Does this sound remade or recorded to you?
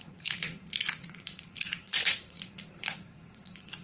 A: remade